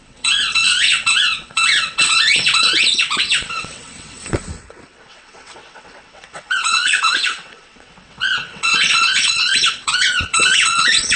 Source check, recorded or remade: remade